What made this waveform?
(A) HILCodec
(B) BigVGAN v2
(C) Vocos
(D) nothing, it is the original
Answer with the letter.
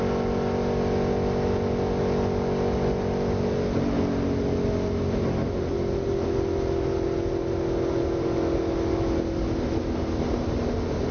D